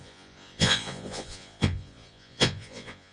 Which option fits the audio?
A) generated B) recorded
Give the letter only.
A